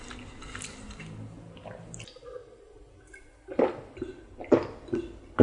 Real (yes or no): yes